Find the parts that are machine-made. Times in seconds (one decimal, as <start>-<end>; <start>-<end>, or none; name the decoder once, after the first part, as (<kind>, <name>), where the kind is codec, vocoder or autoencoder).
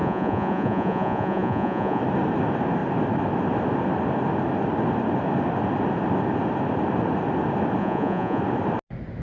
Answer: 0.0-2.0 (vocoder, Vocos); 7.8-8.4